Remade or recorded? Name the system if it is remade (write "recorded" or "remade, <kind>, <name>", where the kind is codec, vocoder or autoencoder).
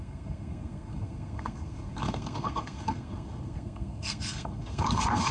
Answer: remade, codec, SNAC